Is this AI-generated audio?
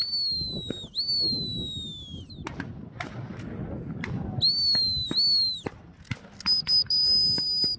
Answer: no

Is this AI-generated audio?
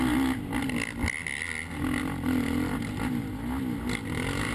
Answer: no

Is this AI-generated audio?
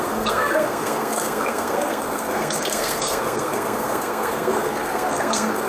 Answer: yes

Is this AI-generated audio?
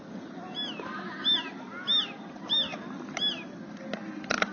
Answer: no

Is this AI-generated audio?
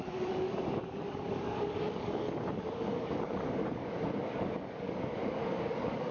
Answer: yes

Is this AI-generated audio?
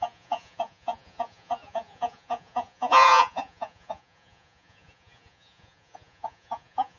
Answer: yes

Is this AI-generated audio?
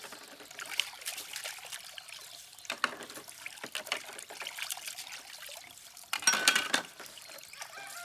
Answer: no